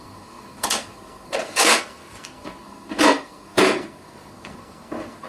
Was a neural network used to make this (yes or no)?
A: yes